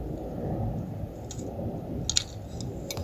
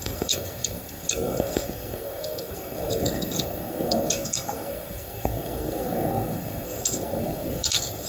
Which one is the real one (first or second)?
first